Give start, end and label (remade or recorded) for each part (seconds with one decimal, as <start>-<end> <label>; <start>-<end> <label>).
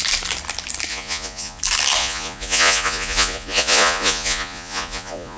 0.0-0.9 recorded; 0.9-1.6 remade; 1.6-2.0 recorded; 2.0-5.4 remade